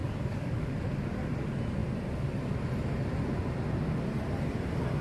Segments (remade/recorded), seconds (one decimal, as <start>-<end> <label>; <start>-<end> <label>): 0.0-0.8 remade; 0.8-5.0 recorded